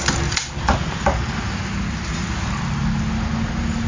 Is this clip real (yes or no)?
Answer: yes